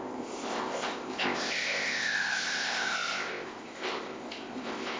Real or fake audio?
fake